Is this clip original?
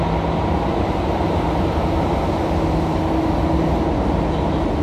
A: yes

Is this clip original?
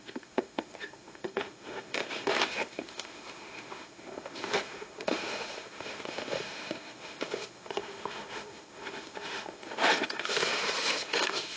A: no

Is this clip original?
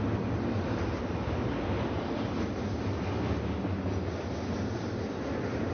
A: yes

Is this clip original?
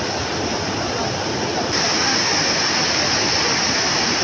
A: yes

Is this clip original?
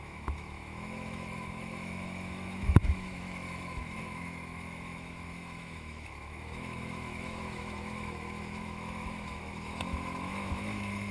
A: no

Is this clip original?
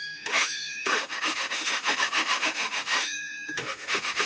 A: no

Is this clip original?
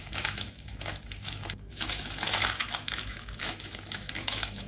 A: no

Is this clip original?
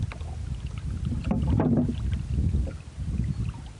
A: yes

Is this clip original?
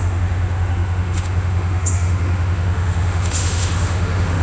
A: no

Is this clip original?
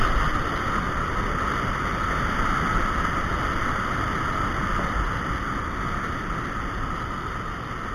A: yes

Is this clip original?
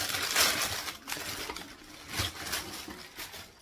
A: yes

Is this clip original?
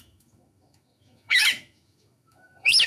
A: no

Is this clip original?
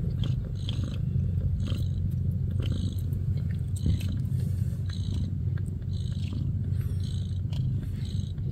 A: yes